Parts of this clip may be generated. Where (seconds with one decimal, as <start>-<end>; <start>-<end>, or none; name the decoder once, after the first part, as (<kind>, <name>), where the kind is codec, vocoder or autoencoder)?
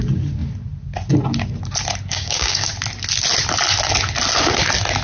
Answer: 2.1-2.7 (codec, DAC)